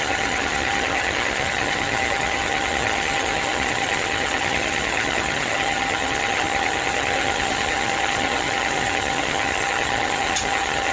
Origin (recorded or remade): remade